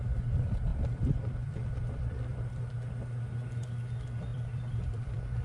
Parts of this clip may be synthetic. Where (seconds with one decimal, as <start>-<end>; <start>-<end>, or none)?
0.7-2.7; 4.3-5.4